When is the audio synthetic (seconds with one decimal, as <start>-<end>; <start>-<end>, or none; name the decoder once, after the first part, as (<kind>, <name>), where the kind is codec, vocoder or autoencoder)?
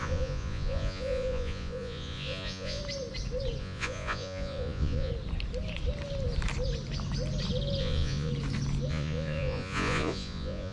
0.0-2.8 (vocoder, Vocos); 3.6-5.1; 7.8-8.3; 8.9-10.7